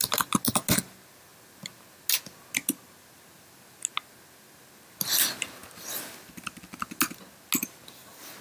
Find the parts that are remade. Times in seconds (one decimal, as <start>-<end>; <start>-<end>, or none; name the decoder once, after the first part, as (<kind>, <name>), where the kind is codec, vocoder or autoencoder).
none